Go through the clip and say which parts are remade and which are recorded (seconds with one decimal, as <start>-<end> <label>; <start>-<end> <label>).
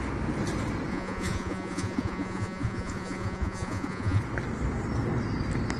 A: 0.0-0.9 recorded; 0.9-4.2 remade; 4.2-5.8 recorded